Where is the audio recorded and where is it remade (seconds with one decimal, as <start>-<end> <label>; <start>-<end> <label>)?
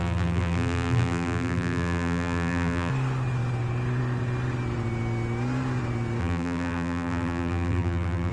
0.0-2.9 remade; 2.9-6.2 recorded; 6.2-8.3 remade